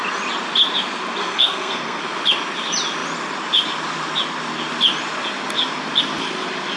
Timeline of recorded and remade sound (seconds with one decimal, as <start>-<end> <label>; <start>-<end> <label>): 0.0-1.2 recorded; 1.2-2.0 remade; 2.0-6.8 recorded